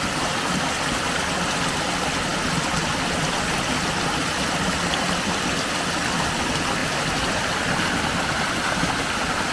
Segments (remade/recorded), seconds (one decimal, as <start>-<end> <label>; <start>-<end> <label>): 0.0-9.5 recorded